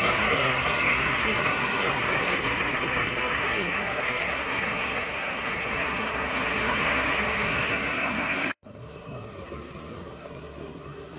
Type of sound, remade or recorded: remade